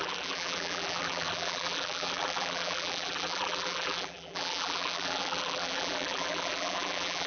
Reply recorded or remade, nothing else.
remade